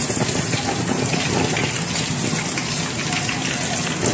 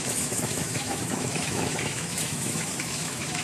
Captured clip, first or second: first